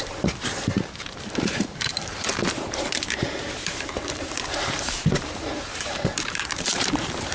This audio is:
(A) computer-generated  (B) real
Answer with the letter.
A